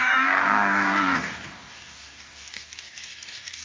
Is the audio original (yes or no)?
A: no